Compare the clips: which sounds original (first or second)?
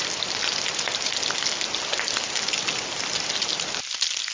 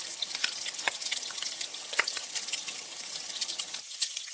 first